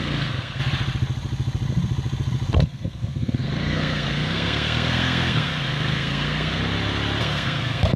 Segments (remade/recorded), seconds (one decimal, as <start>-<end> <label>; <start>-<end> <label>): 0.0-0.6 remade; 0.6-2.6 recorded; 2.6-6.6 remade; 6.6-7.2 recorded; 7.2-8.0 remade